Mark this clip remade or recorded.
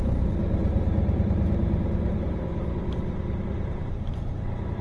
remade